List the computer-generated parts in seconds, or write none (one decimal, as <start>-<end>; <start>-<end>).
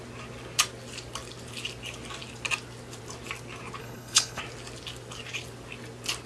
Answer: 3.8-4.4